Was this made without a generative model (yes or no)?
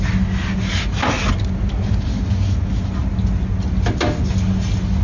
yes